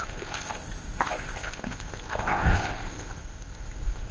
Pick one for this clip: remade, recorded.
remade